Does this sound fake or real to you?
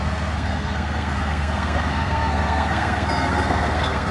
fake